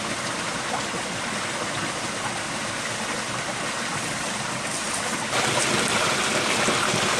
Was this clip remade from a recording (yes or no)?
no